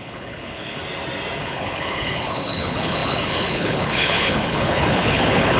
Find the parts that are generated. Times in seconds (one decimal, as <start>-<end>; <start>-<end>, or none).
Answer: 0.0-0.8; 1.4-5.6

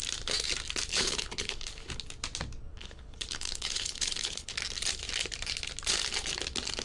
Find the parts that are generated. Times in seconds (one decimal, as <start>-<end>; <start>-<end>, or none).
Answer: 0.9-1.9; 2.7-4.5